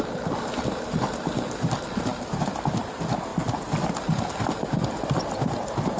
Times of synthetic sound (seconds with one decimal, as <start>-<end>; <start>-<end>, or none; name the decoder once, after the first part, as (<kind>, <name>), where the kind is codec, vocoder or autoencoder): none